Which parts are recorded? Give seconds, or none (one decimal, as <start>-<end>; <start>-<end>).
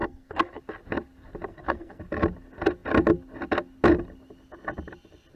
0.6-1.5; 2.0-5.4